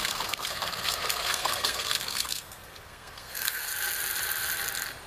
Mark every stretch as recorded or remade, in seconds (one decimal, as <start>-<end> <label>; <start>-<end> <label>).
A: 0.0-3.7 remade; 3.7-5.1 recorded